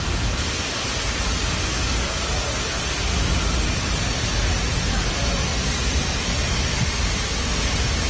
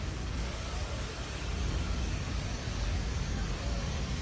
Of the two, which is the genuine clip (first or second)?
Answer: first